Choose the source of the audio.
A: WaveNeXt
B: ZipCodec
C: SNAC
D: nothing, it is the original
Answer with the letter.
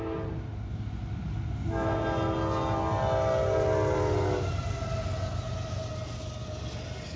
D